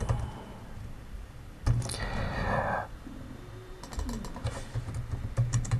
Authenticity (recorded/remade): recorded